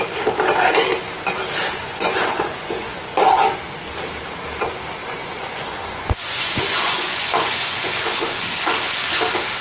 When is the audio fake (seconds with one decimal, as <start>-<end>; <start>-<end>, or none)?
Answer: 1.8-3.1; 5.0-9.2